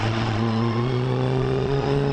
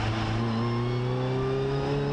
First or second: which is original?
second